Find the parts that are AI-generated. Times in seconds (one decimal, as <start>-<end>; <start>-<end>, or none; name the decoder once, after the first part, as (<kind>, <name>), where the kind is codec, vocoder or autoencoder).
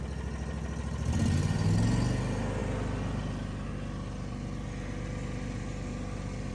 none